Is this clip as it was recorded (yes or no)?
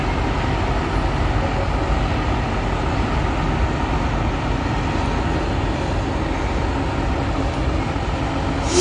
yes